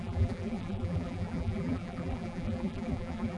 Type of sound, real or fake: fake